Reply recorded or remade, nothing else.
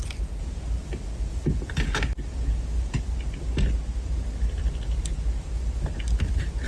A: recorded